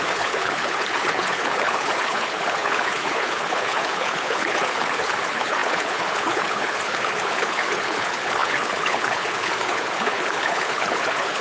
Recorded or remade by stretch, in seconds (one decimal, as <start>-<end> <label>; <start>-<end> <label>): 0.0-11.4 remade